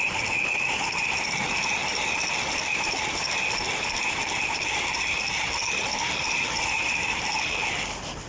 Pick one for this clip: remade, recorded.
recorded